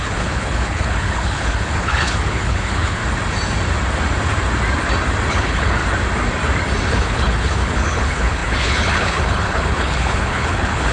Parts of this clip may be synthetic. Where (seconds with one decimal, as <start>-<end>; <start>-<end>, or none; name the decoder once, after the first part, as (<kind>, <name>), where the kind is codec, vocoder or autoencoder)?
0.0-3.0 (codec, HILCodec); 5.3-5.8; 6.9-10.9